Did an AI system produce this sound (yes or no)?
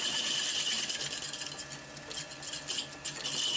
no